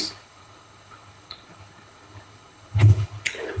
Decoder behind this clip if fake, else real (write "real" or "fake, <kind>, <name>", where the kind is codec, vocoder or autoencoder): fake, codec, HILCodec